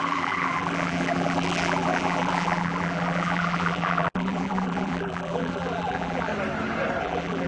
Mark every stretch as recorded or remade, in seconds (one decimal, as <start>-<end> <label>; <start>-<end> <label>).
0.0-6.3 remade; 6.3-7.0 recorded; 7.0-7.5 remade